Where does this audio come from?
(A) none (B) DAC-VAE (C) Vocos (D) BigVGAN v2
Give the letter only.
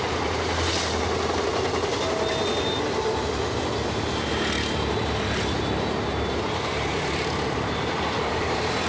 A